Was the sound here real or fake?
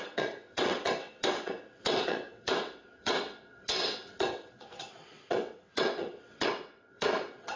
fake